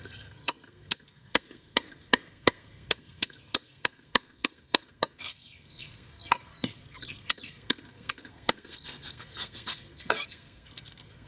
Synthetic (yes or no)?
yes